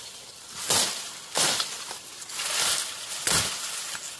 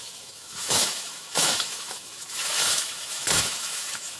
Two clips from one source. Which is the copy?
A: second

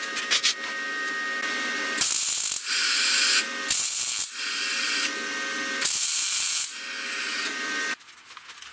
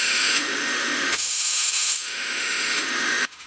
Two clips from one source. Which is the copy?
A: second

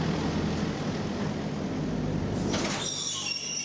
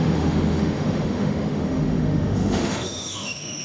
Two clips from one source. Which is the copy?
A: second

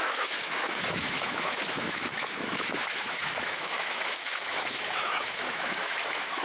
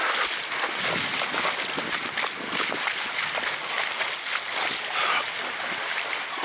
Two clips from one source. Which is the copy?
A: first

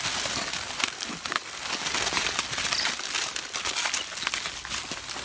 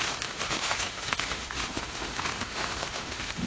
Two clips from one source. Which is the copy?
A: second